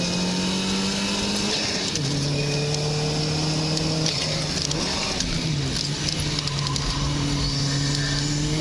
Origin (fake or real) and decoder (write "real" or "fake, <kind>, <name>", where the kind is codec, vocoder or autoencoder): real